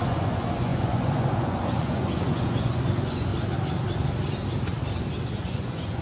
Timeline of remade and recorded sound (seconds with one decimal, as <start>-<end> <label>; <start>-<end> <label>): 0.0-3.3 remade; 3.3-5.2 recorded; 5.2-6.0 remade